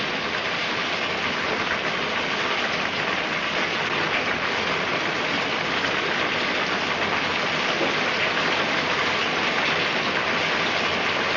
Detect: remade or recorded recorded